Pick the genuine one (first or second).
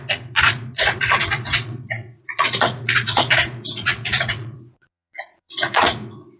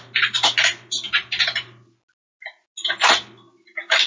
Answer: second